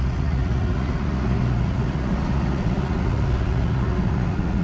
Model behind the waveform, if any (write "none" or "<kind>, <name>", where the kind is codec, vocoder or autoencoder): vocoder, Vocos